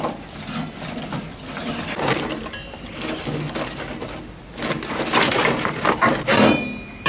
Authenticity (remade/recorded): remade